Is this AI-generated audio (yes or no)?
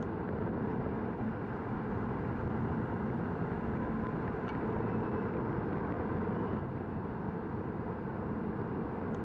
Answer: no